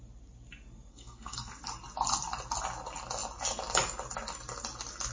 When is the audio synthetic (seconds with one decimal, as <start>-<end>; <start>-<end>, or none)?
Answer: 0.9-1.5